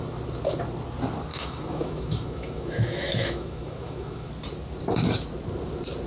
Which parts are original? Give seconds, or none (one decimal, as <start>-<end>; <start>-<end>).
0.0-1.3; 4.3-6.1